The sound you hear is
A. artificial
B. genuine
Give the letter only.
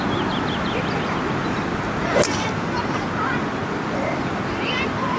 B